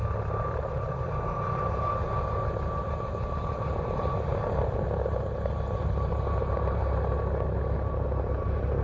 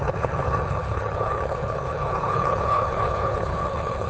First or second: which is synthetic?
second